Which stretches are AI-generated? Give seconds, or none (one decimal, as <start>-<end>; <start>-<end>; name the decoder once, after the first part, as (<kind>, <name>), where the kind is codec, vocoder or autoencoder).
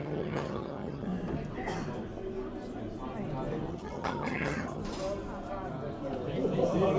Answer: 0.0-1.1 (vocoder, HiFi-GAN); 3.7-4.8